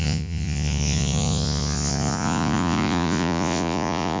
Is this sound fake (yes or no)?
yes